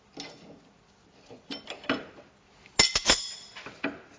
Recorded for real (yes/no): yes